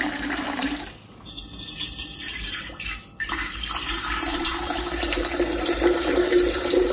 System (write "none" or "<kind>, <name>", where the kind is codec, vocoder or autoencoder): vocoder, BigVGAN v2